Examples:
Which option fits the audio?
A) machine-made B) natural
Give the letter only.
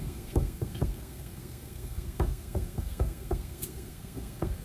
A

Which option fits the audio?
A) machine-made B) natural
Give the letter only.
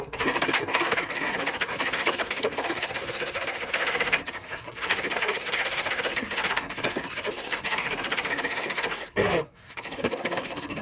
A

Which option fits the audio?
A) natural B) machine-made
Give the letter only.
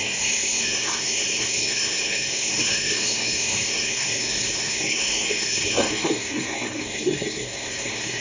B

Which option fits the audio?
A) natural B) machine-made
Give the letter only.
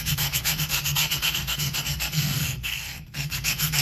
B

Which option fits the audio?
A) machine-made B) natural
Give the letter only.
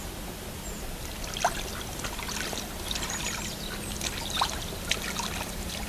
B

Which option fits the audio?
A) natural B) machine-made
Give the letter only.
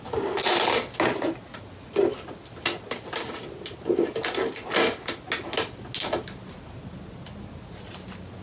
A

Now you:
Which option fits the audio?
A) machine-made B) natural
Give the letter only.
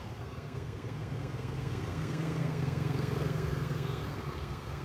A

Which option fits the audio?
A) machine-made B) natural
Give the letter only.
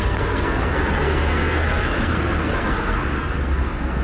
A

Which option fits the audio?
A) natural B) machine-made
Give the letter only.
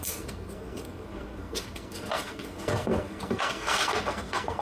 B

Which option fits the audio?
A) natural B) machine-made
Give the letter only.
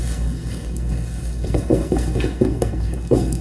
B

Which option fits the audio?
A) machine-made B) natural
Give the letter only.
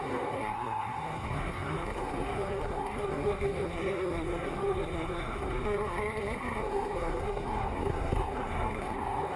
A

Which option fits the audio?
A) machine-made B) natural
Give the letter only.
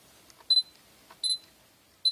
B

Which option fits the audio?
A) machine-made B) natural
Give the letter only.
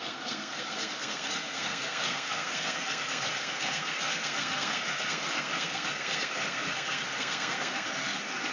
A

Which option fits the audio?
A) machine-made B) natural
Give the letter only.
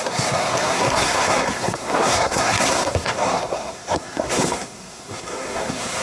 A